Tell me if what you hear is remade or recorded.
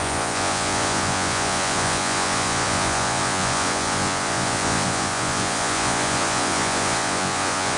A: remade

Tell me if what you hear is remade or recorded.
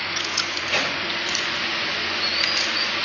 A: remade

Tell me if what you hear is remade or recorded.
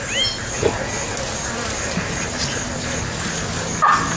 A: recorded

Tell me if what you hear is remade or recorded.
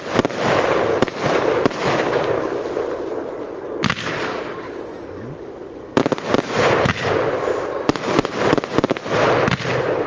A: recorded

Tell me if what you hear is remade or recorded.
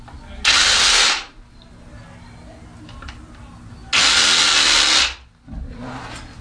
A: recorded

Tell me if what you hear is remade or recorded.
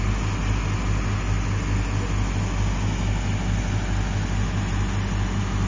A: recorded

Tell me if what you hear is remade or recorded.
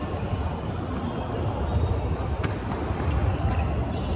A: recorded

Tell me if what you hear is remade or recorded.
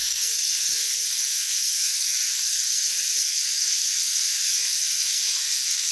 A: remade